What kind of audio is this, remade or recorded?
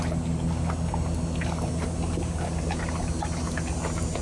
recorded